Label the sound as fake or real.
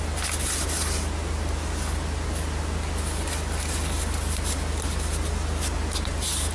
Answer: real